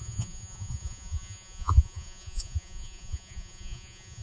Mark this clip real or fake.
fake